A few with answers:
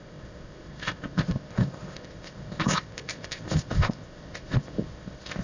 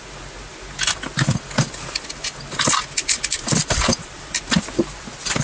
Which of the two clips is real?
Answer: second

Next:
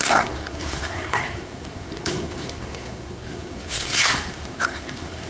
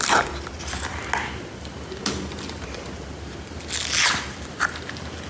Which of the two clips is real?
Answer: second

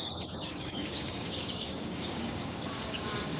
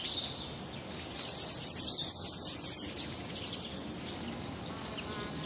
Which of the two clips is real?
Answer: second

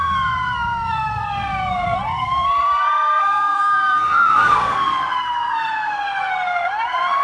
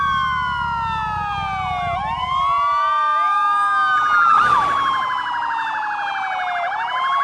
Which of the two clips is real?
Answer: second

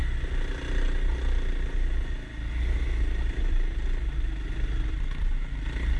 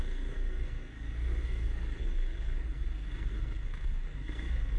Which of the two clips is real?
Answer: first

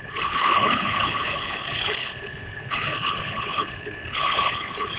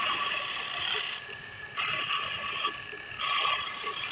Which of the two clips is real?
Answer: second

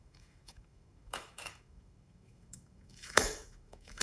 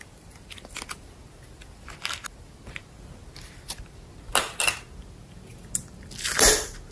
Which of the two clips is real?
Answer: second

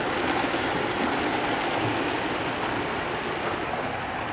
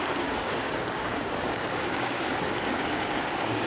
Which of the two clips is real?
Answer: first